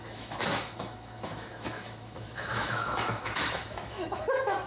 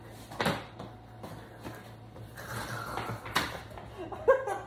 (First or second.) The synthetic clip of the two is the first